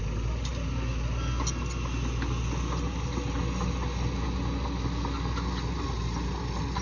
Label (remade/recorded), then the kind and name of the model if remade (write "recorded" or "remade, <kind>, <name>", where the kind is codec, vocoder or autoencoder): recorded